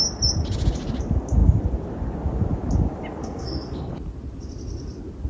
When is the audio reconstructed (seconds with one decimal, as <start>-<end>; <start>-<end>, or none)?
3.2-3.9